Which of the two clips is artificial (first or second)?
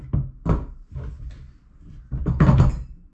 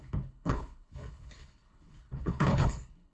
second